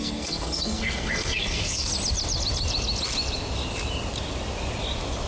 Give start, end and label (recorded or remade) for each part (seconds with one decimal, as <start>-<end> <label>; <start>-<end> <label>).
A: 0.0-1.9 remade; 1.9-5.3 recorded